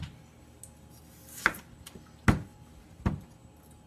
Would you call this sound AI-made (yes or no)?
no